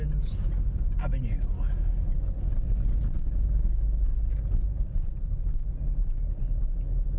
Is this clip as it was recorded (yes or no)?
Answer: yes